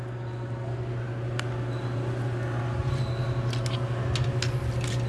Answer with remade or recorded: recorded